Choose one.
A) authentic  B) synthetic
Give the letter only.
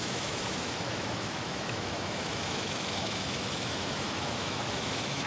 B